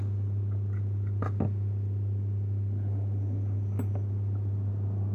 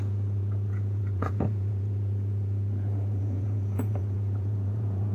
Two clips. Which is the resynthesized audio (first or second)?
second